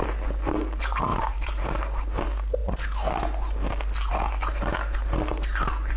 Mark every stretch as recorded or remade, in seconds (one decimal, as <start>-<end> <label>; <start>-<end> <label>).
0.0-1.1 recorded; 1.1-2.2 remade; 2.2-6.0 recorded